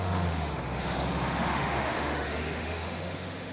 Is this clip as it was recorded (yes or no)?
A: no